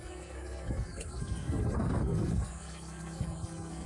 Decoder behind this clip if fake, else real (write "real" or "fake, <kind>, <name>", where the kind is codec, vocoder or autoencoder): fake, codec, SNAC